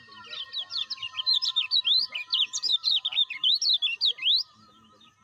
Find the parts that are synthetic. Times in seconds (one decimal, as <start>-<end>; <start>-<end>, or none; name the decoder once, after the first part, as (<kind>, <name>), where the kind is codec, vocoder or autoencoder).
0.7-1.8 (vocoder, BigVGAN v2); 2.3-3.6